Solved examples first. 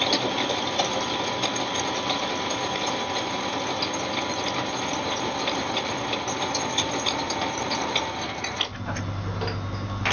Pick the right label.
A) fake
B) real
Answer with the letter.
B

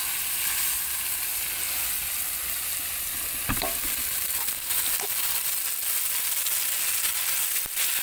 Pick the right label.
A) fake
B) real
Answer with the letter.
B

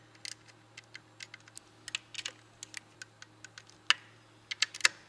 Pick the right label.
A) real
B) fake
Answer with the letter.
A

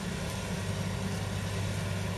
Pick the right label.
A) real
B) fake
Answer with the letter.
A